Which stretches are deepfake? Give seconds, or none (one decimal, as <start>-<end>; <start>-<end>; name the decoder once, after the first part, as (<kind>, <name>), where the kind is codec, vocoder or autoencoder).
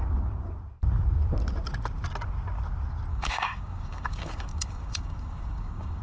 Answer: 3.1-6.0 (codec, DAC)